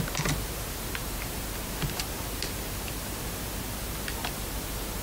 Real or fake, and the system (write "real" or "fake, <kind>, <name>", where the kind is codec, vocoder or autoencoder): fake, vocoder, BigVGAN v2